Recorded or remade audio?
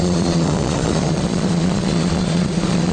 remade